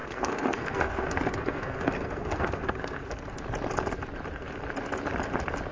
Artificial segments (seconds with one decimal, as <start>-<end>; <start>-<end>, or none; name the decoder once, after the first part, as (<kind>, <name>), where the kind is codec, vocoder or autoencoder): 0.0-3.4 (codec, SNAC)